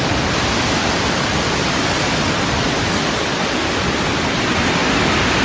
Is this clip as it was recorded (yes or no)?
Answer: yes